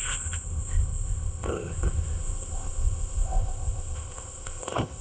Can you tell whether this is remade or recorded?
remade